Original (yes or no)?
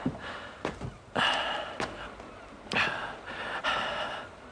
no